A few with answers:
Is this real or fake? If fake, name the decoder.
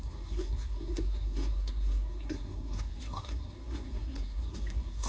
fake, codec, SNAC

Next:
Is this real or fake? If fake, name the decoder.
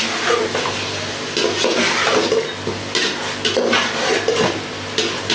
real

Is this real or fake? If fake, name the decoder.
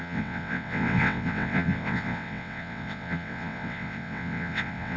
fake, vocoder, WaveNeXt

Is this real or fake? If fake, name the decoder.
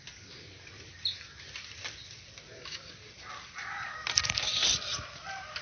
fake, vocoder, BigVGAN v2